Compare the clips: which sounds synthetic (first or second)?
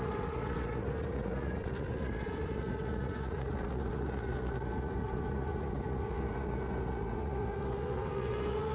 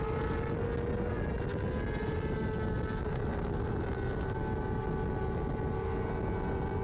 first